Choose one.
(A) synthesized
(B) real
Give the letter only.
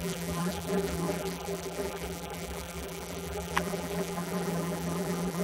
A